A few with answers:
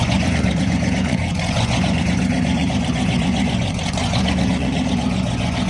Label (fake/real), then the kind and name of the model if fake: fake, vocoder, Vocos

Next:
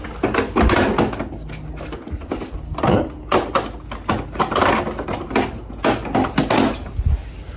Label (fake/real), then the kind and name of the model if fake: real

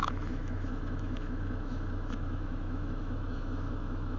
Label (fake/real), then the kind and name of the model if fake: fake, autoencoder, DAC-VAE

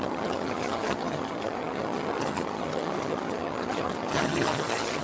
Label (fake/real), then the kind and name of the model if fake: fake, vocoder, HiFi-GAN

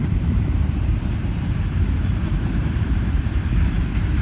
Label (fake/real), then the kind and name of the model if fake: fake, vocoder, BigVGAN v2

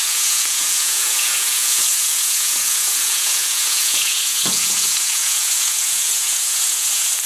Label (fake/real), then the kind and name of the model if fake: fake, vocoder, Vocos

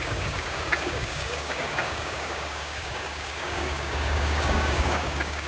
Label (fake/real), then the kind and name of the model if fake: fake, codec, DAC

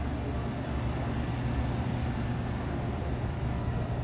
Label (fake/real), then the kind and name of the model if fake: real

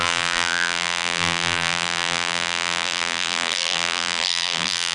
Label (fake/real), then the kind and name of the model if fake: fake, vocoder, BigVGAN v2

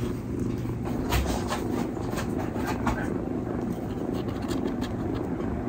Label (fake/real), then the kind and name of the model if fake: real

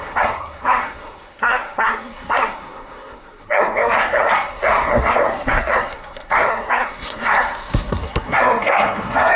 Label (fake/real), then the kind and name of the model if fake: fake, codec, SNAC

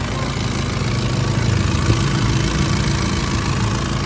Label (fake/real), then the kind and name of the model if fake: real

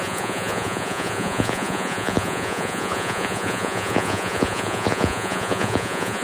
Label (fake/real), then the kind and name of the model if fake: fake, vocoder, Vocos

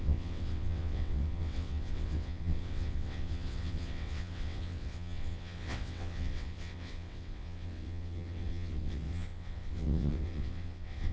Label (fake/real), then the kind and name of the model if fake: fake, vocoder, WaveNeXt